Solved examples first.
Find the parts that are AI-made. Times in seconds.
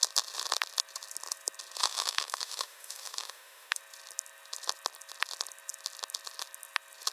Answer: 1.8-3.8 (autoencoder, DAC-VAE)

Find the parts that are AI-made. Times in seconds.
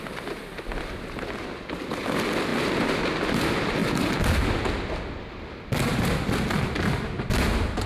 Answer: none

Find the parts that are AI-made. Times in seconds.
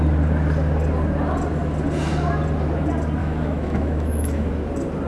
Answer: 3.2-4.5 (autoencoder, DAC-VAE)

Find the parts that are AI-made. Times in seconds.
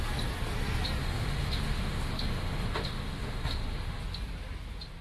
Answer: 1.0-4.0 (autoencoder, DAC-VAE)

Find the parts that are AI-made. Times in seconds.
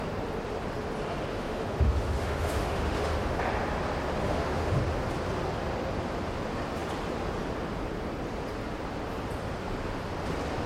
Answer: 1.3-3.4 (autoencoder, DAC-VAE); 4.2-4.8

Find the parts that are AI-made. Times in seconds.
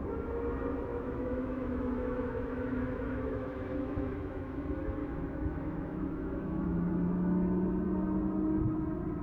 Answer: 0.9-4.6 (autoencoder, DAC-VAE); 5.0-6.9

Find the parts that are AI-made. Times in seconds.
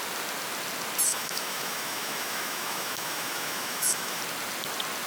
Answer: 1.1-4.2 (autoencoder, DAC-VAE)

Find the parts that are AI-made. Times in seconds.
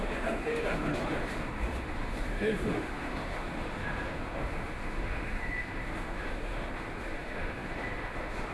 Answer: 0.0-8.5 (autoencoder, DAC-VAE)